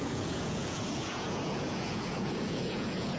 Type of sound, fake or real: fake